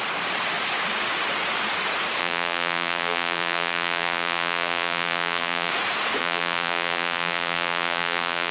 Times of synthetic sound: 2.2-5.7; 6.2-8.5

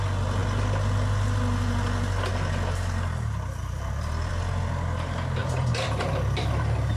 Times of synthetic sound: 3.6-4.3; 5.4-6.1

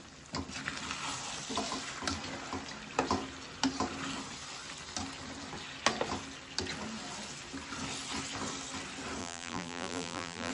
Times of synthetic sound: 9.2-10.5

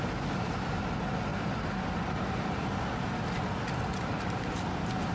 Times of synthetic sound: none